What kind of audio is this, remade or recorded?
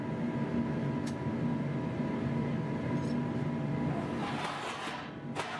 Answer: recorded